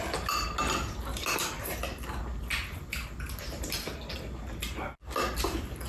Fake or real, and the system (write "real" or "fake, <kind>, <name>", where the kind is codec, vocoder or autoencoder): real